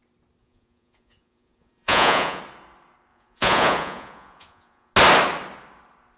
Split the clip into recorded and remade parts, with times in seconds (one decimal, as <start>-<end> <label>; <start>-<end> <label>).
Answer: 0.0-0.4 recorded; 0.4-2.4 remade; 2.4-3.1 recorded; 3.1-4.9 remade; 4.9-6.2 recorded